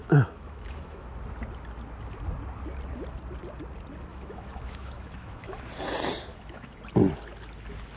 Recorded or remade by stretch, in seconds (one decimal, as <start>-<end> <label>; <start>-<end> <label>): 0.0-1.1 remade; 1.1-4.1 recorded; 4.1-5.6 remade; 5.6-6.3 recorded; 6.3-6.8 remade; 6.8-8.0 recorded